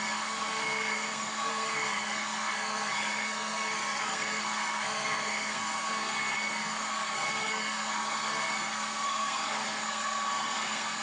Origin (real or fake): fake